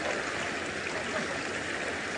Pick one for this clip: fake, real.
real